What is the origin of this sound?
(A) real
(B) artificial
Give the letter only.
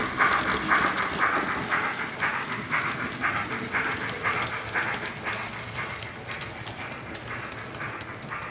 A